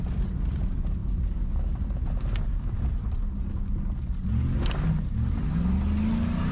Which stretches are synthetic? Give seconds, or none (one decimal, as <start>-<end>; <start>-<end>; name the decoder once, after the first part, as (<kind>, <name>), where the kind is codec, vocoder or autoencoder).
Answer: none